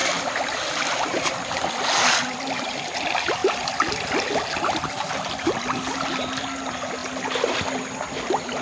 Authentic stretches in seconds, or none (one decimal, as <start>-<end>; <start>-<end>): 1.3-7.0; 7.6-8.6